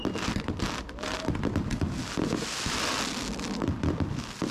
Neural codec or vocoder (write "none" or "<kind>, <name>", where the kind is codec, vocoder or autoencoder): vocoder, BigVGAN v2